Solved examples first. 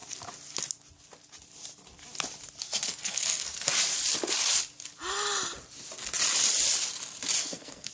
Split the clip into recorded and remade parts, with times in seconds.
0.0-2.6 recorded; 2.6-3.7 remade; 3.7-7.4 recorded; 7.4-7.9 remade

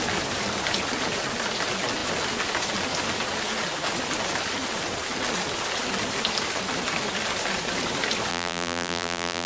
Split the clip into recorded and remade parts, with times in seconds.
0.0-8.3 recorded; 8.3-9.5 remade

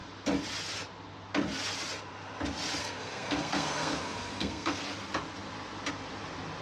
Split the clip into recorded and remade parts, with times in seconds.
0.0-2.8 recorded; 2.8-4.8 remade; 4.8-6.6 recorded

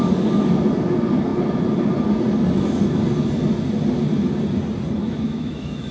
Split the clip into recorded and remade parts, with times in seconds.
0.0-5.0 recorded; 5.0-5.9 remade